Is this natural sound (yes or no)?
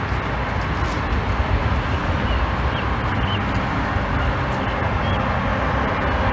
yes